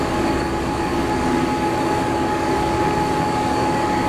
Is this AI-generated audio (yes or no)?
yes